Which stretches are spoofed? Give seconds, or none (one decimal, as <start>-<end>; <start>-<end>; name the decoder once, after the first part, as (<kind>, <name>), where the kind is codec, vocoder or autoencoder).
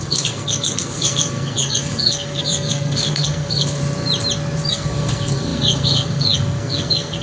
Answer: 0.0-3.8 (codec, SNAC); 4.7-7.2